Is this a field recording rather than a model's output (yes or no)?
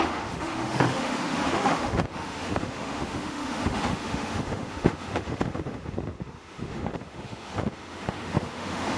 no